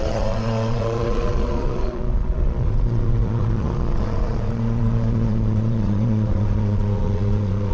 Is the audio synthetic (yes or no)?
yes